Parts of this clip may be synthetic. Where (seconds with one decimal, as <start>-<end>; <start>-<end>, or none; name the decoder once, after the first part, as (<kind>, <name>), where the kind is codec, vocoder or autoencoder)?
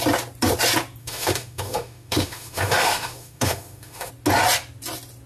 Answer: 1.0-4.1 (autoencoder, DAC-VAE)